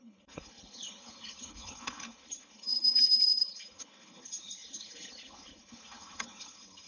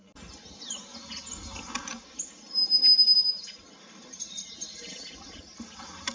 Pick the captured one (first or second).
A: second